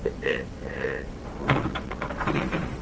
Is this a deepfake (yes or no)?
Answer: yes